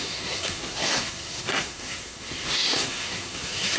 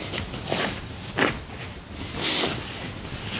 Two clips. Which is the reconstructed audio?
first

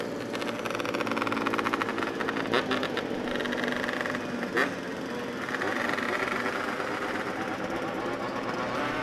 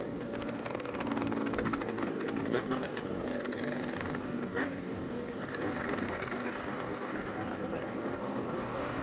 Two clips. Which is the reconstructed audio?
second